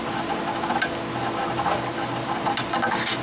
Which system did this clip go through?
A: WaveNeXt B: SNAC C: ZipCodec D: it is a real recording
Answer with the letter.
D